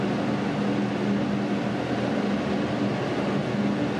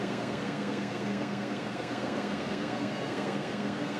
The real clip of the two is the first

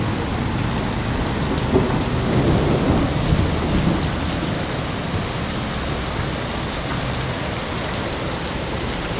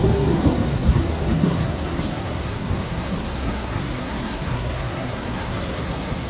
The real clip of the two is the first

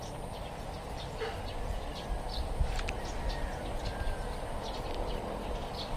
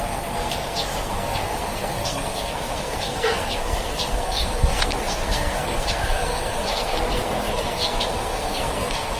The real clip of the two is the first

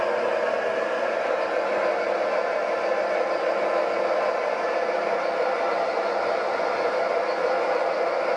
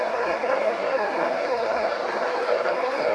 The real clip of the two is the first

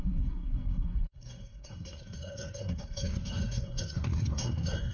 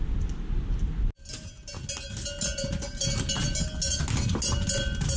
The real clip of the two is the second